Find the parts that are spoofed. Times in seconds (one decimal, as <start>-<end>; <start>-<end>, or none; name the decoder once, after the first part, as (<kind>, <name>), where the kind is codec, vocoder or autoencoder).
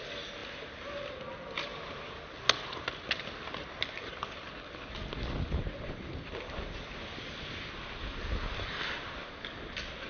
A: none